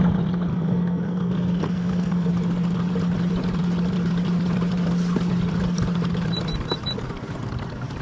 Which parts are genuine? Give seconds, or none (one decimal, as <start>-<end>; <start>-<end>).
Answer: 0.0-0.5; 2.3-8.0